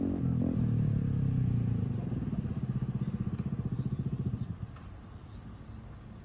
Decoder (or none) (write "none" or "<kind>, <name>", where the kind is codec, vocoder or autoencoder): none